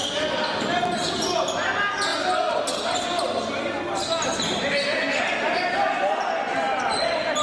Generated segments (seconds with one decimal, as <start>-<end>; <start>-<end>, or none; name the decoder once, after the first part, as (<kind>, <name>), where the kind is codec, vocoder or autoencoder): none